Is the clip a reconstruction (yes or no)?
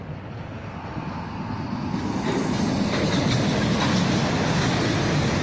no